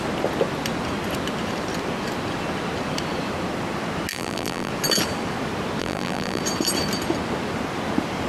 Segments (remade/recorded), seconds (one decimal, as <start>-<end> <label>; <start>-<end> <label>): 0.0-4.1 recorded; 4.1-4.7 remade; 4.7-5.8 recorded; 5.8-6.4 remade; 6.4-8.3 recorded